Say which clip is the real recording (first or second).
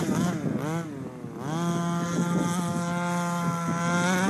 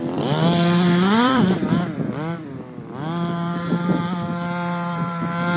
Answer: first